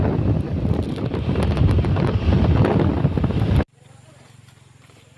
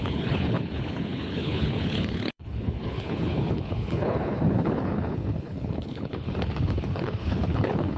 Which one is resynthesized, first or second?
second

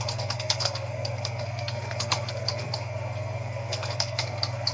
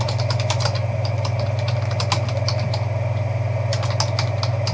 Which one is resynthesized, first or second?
first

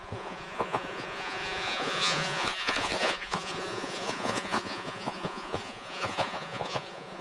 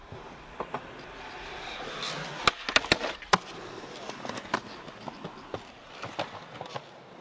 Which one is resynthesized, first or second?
first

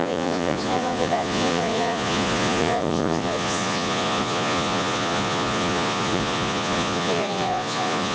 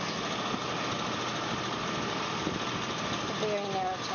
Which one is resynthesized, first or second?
first